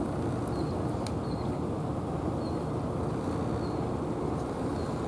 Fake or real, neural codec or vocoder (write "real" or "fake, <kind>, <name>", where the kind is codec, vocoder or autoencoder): real